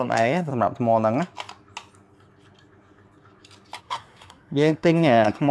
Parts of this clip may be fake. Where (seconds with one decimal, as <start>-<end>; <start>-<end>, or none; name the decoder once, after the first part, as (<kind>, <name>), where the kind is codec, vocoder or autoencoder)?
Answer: 0.0-0.5 (codec, SNAC); 3.8-5.5